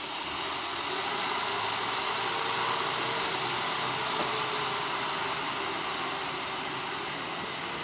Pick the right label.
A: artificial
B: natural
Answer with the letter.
B